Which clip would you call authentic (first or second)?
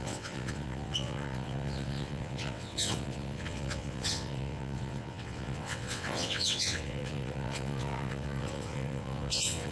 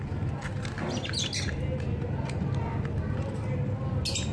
second